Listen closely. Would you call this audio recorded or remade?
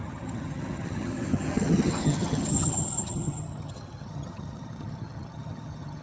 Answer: remade